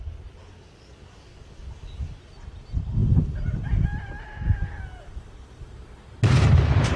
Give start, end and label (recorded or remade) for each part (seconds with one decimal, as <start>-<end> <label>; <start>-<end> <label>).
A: 0.0-0.4 recorded; 0.4-2.2 remade; 2.2-7.0 recorded